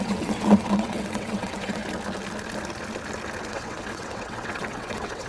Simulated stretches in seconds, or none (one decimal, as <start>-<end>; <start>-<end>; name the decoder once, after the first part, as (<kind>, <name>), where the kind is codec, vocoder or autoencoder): 0.0-1.8 (vocoder, WaveNeXt); 3.5-5.3

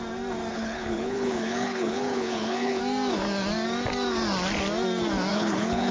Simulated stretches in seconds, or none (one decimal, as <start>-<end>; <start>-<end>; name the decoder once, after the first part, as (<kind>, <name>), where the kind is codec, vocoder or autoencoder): 0.5-2.8 (codec, HILCodec); 5.3-5.9

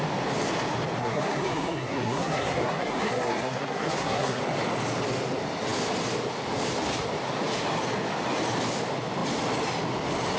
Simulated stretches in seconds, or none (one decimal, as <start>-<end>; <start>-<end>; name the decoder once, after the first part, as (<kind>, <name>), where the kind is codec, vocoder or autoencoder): 1.0-4.4 (codec, SNAC)

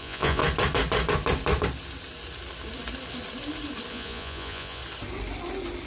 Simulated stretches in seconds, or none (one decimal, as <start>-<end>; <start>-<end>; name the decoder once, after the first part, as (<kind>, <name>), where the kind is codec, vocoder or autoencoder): 0.0-0.4 (vocoder, Vocos); 3.9-4.8

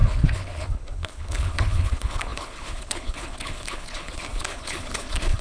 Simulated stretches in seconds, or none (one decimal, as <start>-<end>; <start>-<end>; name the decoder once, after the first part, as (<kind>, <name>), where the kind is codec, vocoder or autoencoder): 0.0-5.4 (codec, HILCodec)

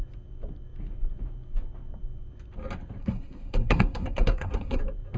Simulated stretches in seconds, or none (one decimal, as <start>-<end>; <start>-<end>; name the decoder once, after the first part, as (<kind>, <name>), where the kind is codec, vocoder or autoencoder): 3.0-4.8 (codec, SNAC)

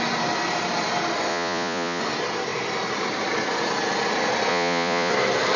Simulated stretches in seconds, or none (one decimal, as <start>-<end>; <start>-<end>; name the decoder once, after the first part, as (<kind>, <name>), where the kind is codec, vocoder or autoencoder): 1.3-2.0 (vocoder, Vocos); 4.5-5.1

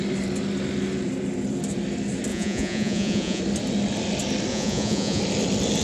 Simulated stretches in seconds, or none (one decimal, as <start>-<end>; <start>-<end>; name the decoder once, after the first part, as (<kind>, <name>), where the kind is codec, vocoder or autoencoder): 2.3-3.4 (vocoder, Vocos); 4.5-5.2